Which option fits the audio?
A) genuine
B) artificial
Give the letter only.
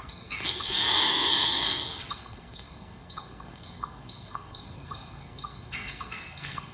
B